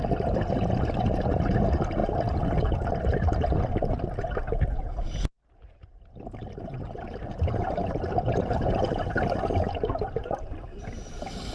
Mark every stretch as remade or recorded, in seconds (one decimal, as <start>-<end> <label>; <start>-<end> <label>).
0.0-2.0 remade; 2.0-6.6 recorded; 6.6-11.5 remade